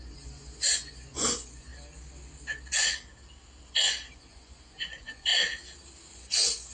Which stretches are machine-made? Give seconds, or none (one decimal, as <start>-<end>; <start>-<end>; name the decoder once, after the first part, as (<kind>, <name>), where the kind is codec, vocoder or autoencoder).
0.0-1.7 (vocoder, Vocos); 3.6-5.3; 6.1-6.7